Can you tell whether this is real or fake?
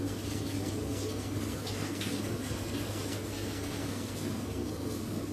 fake